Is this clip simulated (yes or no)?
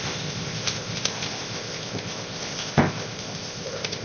yes